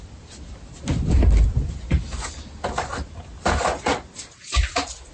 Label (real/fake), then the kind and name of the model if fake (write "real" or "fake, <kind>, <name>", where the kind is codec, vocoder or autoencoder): real